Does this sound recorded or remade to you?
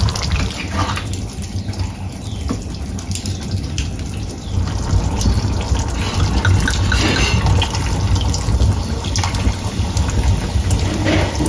recorded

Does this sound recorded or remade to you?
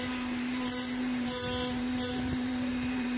remade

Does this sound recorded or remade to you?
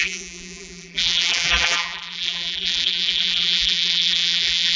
remade